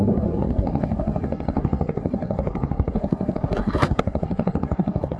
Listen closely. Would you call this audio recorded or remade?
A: remade